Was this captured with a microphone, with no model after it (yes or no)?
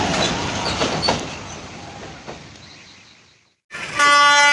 yes